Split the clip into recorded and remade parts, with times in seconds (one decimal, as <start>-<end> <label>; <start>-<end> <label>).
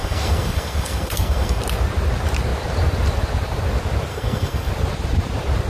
0.0-1.6 remade; 1.6-4.1 recorded; 4.1-4.7 remade; 4.7-5.7 recorded